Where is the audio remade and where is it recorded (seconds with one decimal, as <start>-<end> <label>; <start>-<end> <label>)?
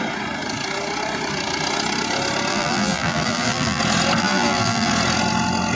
0.0-2.5 recorded; 2.5-3.8 remade; 3.8-4.2 recorded; 4.2-4.9 remade; 4.9-5.8 recorded